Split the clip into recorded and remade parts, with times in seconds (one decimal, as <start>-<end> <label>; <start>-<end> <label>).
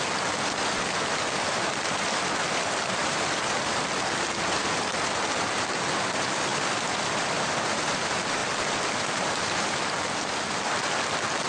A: 0.0-2.4 recorded; 2.4-3.6 remade; 3.6-6.5 recorded; 6.5-7.5 remade; 7.5-8.4 recorded; 8.4-9.8 remade; 9.8-11.5 recorded